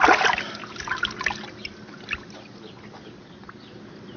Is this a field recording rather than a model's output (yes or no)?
yes